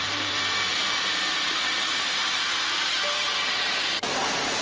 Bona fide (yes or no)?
no